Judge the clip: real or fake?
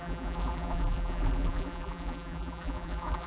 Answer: fake